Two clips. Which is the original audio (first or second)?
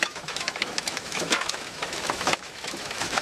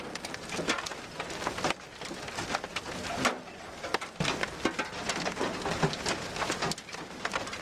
second